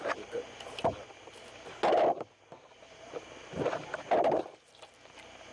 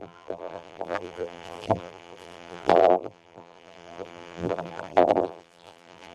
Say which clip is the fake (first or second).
second